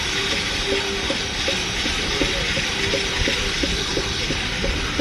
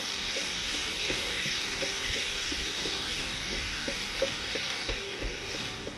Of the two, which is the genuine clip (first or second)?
first